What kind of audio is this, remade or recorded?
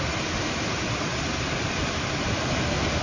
recorded